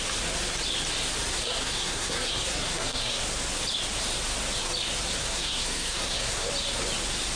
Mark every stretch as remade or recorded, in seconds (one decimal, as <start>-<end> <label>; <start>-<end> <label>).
0.0-1.3 recorded; 1.3-3.2 remade; 3.2-5.2 recorded; 5.2-6.5 remade; 6.5-7.4 recorded